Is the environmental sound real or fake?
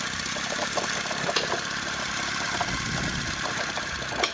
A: real